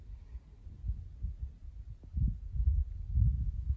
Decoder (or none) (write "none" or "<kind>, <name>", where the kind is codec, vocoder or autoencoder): none